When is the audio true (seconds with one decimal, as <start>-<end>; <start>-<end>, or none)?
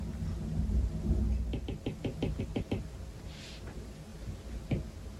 0.0-5.2